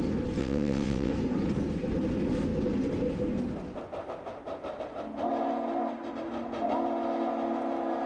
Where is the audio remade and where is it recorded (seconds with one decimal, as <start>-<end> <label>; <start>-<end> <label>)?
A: 0.0-0.4 recorded; 0.4-1.1 remade; 1.1-8.1 recorded